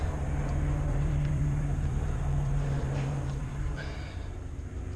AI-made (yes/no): yes